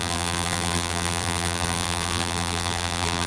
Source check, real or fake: fake